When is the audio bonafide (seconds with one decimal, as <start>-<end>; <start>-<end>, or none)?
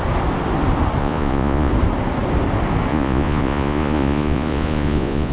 0.0-1.0; 1.7-2.9